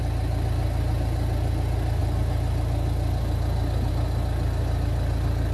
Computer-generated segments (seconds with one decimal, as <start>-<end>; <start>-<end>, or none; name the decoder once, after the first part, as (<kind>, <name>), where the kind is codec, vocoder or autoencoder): none